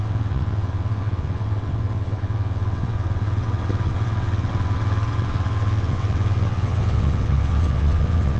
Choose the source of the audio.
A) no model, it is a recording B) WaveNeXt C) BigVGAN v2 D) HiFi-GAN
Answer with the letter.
B